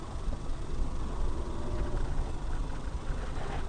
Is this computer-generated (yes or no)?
yes